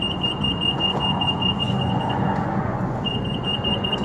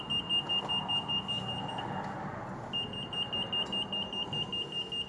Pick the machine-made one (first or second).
first